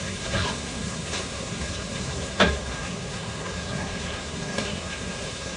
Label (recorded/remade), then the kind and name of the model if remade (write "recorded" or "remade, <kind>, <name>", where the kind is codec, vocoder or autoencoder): remade, codec, SNAC